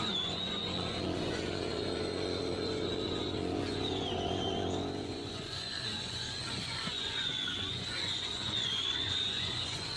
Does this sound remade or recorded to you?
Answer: remade